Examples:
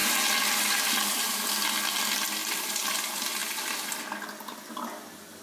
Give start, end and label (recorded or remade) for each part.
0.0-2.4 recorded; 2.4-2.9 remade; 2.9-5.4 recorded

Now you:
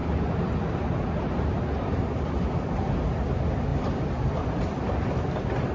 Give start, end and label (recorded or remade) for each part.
0.0-3.7 recorded; 3.7-5.2 remade; 5.2-5.7 recorded